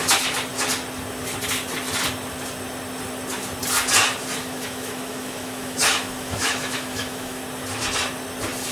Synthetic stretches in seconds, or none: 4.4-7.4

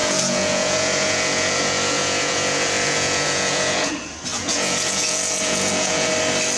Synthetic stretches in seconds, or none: 0.0-3.9; 4.3-6.1

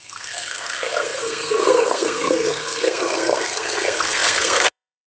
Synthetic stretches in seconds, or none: 0.0-5.1